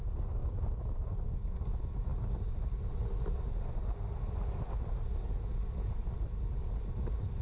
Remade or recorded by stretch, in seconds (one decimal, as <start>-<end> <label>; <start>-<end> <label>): 0.0-0.4 recorded; 0.4-0.9 remade; 0.9-7.4 recorded